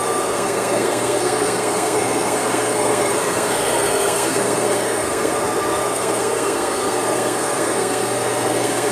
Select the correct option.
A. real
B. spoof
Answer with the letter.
B